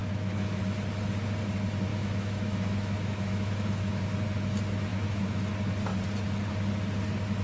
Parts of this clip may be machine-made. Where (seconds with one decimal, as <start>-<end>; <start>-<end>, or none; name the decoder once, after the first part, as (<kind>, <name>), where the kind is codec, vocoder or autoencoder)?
0.0-0.6 (autoencoder, DAC-VAE); 1.9-4.0; 4.9-5.5